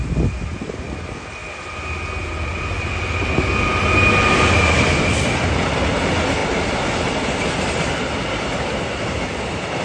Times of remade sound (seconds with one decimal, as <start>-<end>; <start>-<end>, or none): none